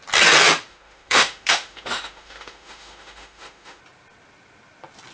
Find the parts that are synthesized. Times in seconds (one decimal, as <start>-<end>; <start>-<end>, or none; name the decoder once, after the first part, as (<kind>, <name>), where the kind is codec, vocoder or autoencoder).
0.7-3.8 (autoencoder, DAC-VAE)